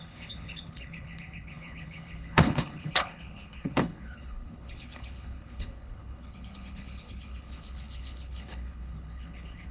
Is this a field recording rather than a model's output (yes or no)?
no